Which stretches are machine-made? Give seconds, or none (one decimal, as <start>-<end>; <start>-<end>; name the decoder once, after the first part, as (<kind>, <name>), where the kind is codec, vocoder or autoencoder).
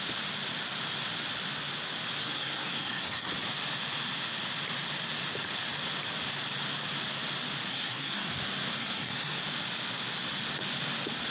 2.2-3.3 (codec, SNAC); 7.7-8.3; 8.8-9.4